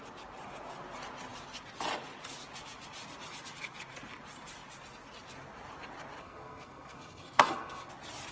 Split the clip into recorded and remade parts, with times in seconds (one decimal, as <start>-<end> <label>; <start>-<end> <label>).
0.0-6.2 recorded; 6.2-7.9 remade; 7.9-8.3 recorded